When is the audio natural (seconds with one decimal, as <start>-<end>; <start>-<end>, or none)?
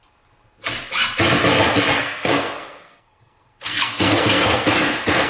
0.0-1.9